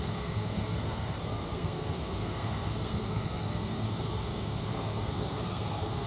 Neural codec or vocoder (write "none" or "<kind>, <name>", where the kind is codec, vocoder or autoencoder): codec, SNAC